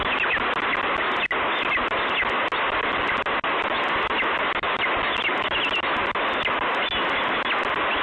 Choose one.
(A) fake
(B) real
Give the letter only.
B